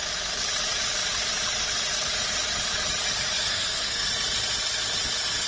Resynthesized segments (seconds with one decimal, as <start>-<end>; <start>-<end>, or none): 3.5-4.1